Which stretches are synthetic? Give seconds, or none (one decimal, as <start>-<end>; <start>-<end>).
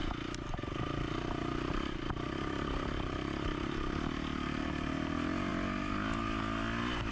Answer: 0.0-4.2